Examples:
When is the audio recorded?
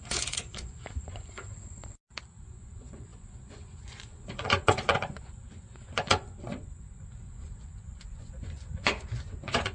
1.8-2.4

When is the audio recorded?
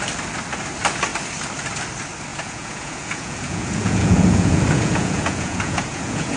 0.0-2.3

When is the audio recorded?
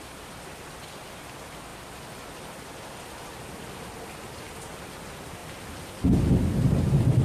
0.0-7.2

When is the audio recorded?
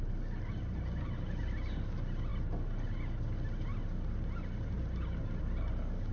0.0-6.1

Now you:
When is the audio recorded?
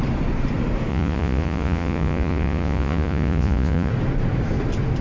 0.0-0.9; 3.9-5.0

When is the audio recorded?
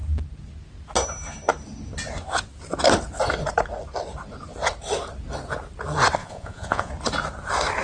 0.0-6.2; 6.9-7.8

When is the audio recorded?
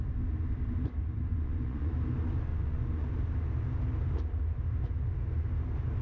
0.0-1.3; 1.9-2.5; 3.1-6.0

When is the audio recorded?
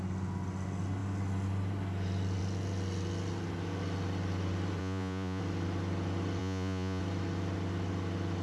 0.0-4.8; 5.4-6.4; 7.0-8.4